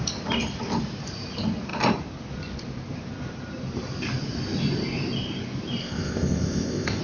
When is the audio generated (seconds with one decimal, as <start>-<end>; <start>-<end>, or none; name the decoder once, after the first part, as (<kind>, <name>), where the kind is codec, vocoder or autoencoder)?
5.8-7.0 (codec, ZipCodec)